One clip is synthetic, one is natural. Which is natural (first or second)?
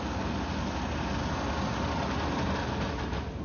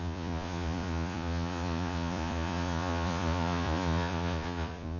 first